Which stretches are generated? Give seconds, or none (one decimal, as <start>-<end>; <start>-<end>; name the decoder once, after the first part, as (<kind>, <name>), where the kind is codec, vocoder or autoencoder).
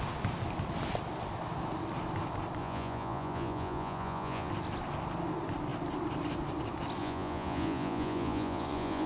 2.6-4.5 (vocoder, Vocos); 7.0-9.1